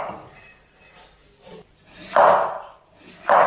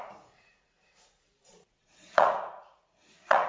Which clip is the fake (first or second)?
second